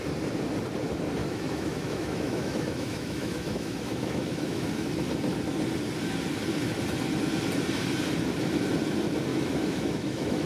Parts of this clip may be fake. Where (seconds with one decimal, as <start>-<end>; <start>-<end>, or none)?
1.2-4.9; 9.3-10.5